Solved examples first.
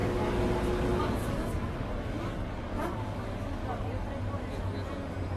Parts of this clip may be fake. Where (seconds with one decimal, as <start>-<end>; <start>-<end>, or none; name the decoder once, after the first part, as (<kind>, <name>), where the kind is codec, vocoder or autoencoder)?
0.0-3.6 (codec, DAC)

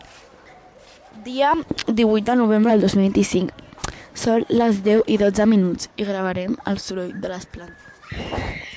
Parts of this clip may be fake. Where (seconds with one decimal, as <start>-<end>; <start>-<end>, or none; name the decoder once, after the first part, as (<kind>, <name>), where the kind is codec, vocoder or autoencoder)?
1.8-2.7 (codec, DAC); 3.8-5.0; 5.9-6.9

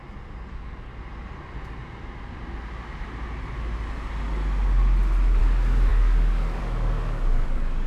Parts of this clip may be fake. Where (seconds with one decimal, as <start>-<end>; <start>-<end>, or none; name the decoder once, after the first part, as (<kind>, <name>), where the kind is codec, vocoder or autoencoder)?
0.5-0.9 (codec, DAC); 5.4-7.9

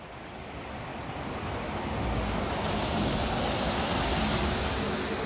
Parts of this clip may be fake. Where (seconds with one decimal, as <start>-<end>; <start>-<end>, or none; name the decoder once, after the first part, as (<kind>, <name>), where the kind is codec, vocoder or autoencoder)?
none